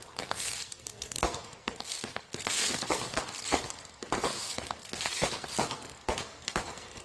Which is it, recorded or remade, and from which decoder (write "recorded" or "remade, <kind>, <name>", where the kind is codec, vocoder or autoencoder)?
remade, codec, SNAC